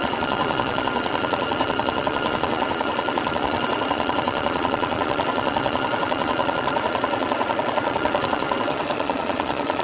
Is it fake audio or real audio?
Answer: fake